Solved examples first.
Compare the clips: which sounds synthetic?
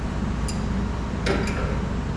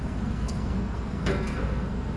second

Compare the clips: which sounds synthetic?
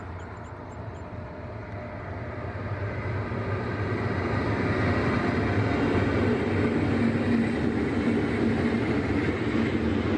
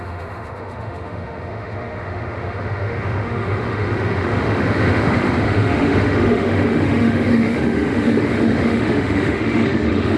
second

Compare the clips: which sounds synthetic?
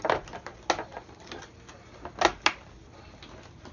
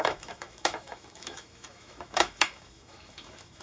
second